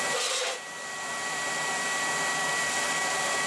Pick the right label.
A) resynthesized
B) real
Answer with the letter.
A